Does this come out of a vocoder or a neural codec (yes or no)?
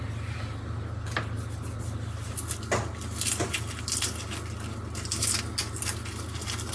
no